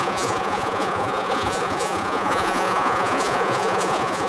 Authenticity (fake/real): fake